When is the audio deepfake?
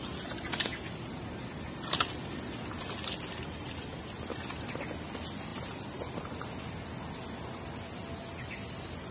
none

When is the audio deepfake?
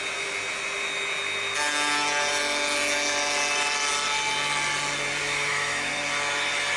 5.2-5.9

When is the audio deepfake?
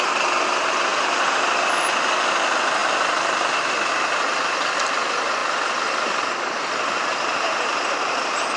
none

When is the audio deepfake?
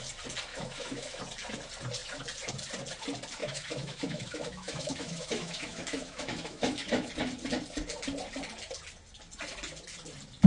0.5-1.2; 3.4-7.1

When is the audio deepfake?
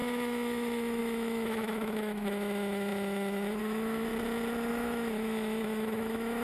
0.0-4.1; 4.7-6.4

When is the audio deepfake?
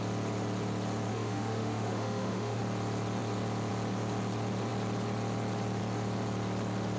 1.1-2.6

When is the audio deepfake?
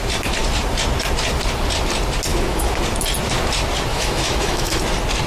2.3-2.8; 3.9-4.8